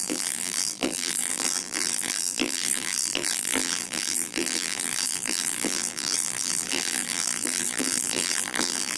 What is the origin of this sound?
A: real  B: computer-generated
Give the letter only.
B